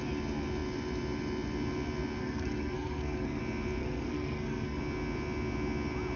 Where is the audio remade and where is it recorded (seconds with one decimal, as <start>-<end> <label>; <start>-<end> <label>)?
0.0-2.2 recorded; 2.2-3.4 remade; 3.4-3.8 recorded; 3.8-4.8 remade; 4.8-6.2 recorded